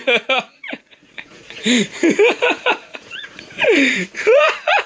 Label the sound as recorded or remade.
remade